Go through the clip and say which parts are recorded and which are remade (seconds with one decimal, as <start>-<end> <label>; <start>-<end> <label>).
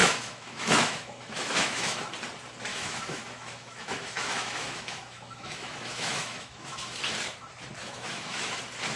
0.0-2.0 remade; 2.0-2.7 recorded; 2.7-7.0 remade; 7.0-7.8 recorded; 7.8-8.6 remade; 8.6-9.0 recorded